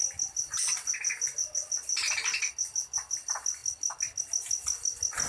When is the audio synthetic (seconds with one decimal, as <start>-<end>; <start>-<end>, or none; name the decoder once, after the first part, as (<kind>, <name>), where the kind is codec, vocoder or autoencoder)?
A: none